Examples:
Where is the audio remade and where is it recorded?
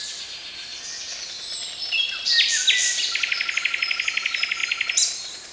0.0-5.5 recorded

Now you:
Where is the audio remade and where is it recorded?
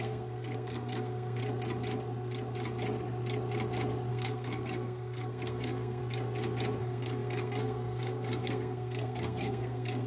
0.0-1.4 remade; 1.4-4.1 recorded; 4.1-6.0 remade; 6.0-6.8 recorded; 6.8-10.1 remade